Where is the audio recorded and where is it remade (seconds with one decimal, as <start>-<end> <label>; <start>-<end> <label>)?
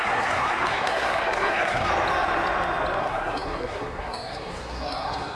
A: 0.0-1.9 remade; 1.9-3.0 recorded; 3.0-5.3 remade